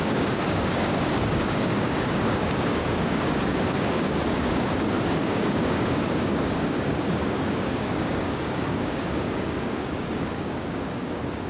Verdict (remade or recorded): remade